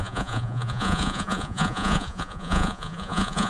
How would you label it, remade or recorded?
remade